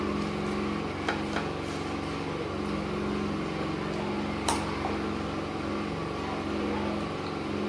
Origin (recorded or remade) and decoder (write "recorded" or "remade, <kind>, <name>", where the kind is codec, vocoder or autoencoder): recorded